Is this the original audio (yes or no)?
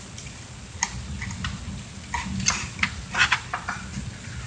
yes